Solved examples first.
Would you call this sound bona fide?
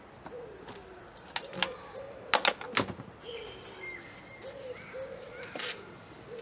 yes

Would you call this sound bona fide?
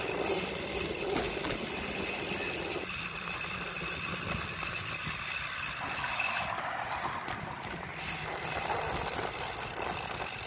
yes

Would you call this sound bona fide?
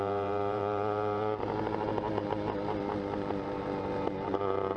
no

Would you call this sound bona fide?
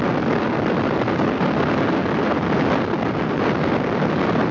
yes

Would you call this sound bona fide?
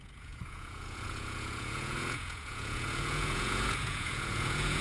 no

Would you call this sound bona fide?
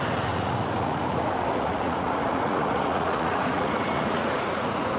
no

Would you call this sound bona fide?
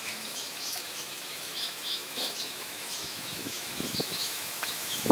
no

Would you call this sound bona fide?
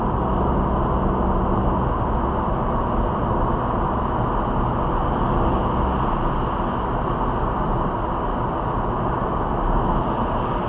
yes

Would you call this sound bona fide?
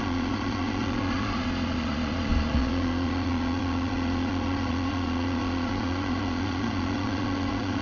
no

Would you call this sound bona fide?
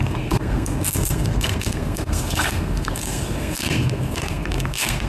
no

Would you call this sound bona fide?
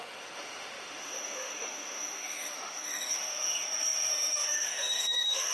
no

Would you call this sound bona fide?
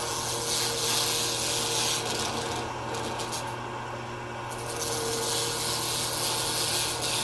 yes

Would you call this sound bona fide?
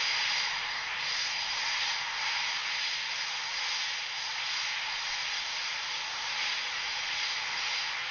yes